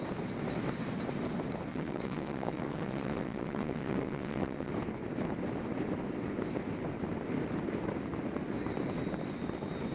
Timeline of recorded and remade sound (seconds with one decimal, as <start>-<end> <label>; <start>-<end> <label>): 0.0-1.7 recorded; 1.7-4.7 remade; 4.7-9.9 recorded